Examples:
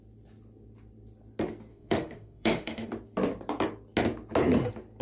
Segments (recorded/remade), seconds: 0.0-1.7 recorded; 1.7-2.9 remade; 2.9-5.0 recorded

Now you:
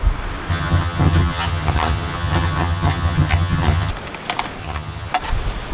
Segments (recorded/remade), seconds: 0.0-0.5 recorded; 0.5-3.9 remade; 3.9-4.6 recorded; 4.6-5.1 remade; 5.1-5.7 recorded

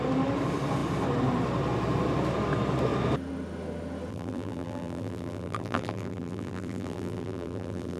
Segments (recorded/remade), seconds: 0.0-4.1 recorded; 4.1-8.0 remade

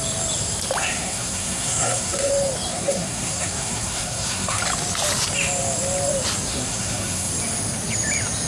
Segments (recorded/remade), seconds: 0.0-0.8 recorded; 0.8-2.3 remade; 2.3-2.7 recorded; 2.7-4.6 remade; 4.6-6.5 recorded; 6.5-7.3 remade; 7.3-8.5 recorded

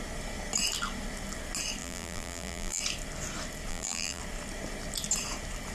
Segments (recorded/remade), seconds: 0.0-1.8 recorded; 1.8-2.8 remade; 2.8-3.7 recorded; 3.7-4.2 remade; 4.2-5.7 recorded

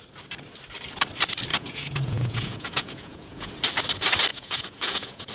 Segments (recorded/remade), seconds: 0.0-1.5 recorded; 1.5-3.5 remade; 3.5-4.3 recorded; 4.3-5.3 remade

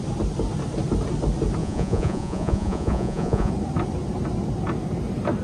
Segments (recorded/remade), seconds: 0.0-1.6 recorded; 1.6-3.5 remade; 3.5-5.4 recorded